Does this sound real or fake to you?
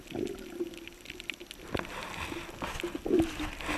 real